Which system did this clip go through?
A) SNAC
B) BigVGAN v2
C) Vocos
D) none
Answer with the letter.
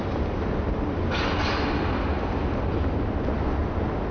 D